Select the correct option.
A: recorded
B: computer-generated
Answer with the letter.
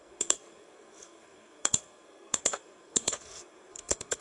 B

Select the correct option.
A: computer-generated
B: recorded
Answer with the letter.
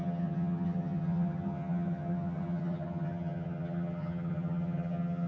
A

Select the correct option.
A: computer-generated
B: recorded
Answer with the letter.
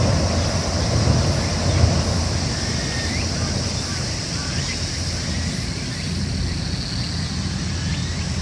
B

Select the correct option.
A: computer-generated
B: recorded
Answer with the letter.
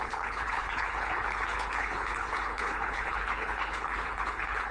A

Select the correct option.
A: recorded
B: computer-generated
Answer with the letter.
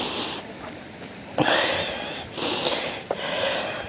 A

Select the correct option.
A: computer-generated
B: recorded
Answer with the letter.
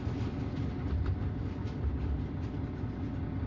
B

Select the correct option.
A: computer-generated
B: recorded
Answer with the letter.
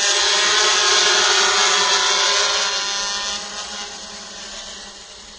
B